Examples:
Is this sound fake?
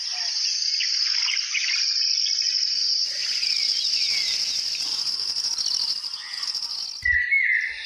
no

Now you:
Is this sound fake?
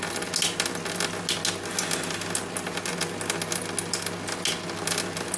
no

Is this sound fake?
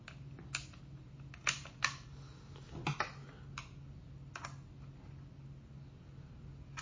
no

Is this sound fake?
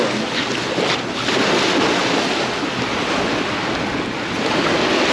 no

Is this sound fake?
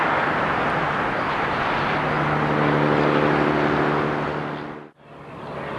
no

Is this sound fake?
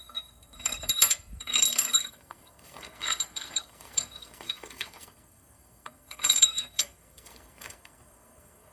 yes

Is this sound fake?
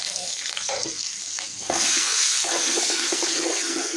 yes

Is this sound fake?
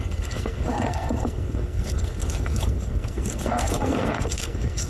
yes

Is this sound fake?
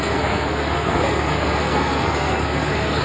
yes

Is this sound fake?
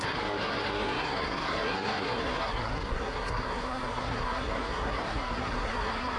yes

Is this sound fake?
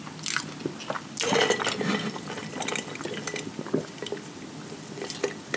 no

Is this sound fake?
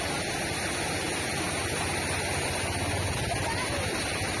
no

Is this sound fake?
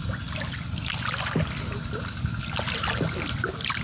no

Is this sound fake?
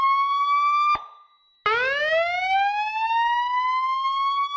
no